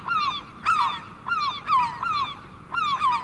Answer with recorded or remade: recorded